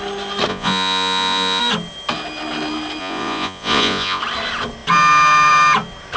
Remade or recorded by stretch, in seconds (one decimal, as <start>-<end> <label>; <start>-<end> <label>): 0.0-0.5 recorded; 0.5-1.6 remade; 1.6-3.0 recorded; 3.0-4.2 remade; 4.2-6.2 recorded